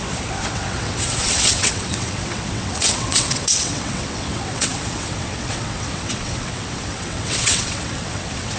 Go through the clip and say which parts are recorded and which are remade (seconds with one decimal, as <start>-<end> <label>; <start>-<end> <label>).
0.0-8.6 remade